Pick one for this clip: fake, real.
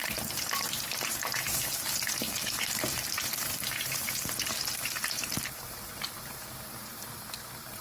fake